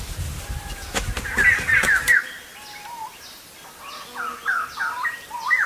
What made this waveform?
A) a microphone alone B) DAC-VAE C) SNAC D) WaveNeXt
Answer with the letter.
A